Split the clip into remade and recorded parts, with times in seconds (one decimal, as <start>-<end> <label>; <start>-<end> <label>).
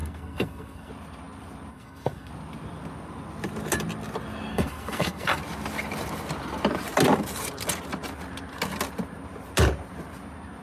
0.0-0.9 remade; 0.9-1.7 recorded; 1.7-2.3 remade; 2.3-4.5 recorded; 4.5-5.4 remade; 5.4-10.6 recorded